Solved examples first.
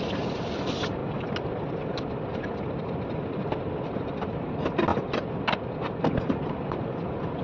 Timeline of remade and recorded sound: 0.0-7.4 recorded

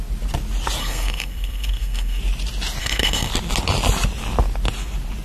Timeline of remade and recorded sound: 0.0-0.8 recorded; 0.8-2.2 remade; 2.2-2.8 recorded; 2.8-3.3 remade; 3.3-5.2 recorded

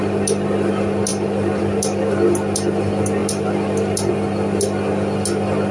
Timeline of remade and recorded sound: 0.0-5.7 recorded

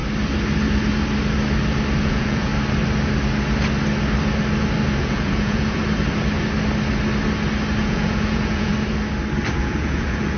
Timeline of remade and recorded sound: 0.0-2.0 recorded; 2.0-2.5 remade; 2.5-5.0 recorded; 5.0-5.8 remade; 5.8-7.8 recorded; 7.8-8.7 remade; 8.7-9.6 recorded; 9.6-10.4 remade

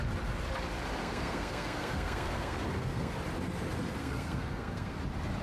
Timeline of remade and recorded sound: 0.0-1.0 recorded; 1.0-3.1 remade; 3.1-4.0 recorded; 4.0-5.0 remade; 5.0-5.4 recorded